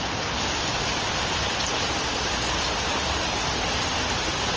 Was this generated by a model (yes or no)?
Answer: no